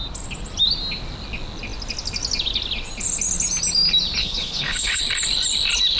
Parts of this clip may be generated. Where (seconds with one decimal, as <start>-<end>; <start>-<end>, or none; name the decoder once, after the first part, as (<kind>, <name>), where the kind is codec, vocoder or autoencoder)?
4.2-5.0 (codec, HILCodec)